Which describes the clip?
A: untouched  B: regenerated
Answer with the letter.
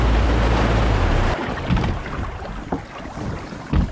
A